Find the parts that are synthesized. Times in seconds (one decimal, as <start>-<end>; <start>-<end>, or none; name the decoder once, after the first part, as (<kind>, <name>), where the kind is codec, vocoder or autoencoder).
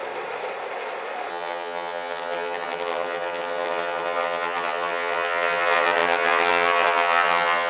1.3-7.7 (vocoder, HiFi-GAN)